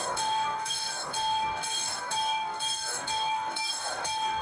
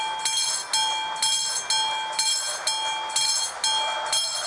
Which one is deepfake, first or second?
first